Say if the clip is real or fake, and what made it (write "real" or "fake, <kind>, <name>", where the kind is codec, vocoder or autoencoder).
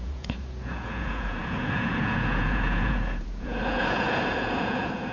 fake, vocoder, Vocos